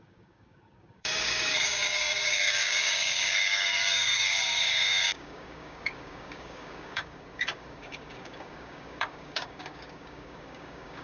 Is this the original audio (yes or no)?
no